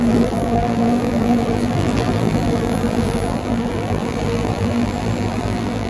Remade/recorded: remade